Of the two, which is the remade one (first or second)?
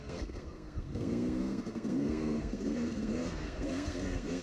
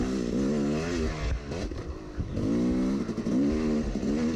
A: first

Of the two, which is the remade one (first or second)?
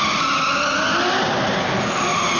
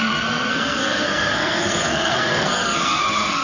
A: second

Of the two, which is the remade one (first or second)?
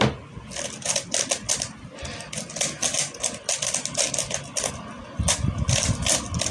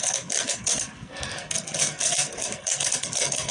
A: second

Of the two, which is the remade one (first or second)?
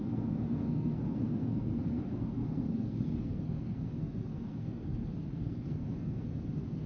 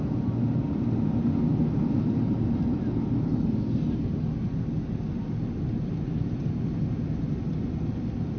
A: first